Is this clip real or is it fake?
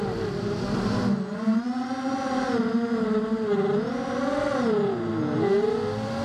real